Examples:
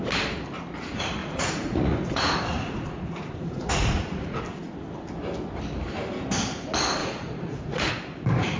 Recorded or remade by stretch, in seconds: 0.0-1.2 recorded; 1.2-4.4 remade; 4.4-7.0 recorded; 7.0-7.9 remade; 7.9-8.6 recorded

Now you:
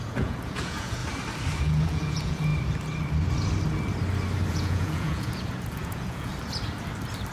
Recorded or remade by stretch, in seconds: 0.0-1.0 remade; 1.0-1.6 recorded; 1.6-2.5 remade; 2.5-4.5 recorded; 4.5-6.3 remade; 6.3-7.3 recorded

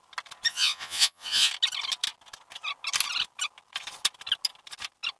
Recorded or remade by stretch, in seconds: 0.0-0.5 recorded; 0.5-1.5 remade; 1.5-5.2 recorded

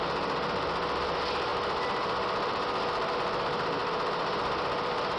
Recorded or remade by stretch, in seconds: 0.0-5.2 recorded

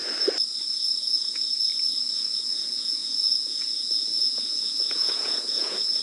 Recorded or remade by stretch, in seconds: 0.0-1.0 recorded; 1.0-1.7 remade; 1.7-2.4 recorded; 2.4-6.0 remade